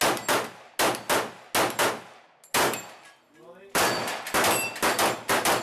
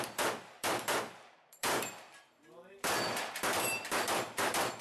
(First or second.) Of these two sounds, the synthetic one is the second